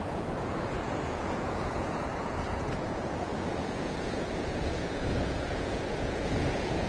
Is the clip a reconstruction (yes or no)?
yes